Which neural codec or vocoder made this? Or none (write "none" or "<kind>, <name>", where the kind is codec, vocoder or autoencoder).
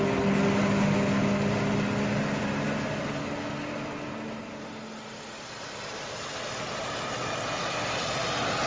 none